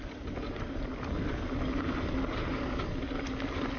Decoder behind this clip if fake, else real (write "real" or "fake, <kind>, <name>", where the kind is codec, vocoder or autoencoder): real